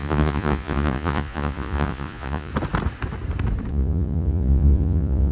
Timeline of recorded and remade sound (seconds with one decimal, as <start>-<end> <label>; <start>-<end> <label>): 0.0-2.5 remade; 2.5-3.7 recorded; 3.7-5.3 remade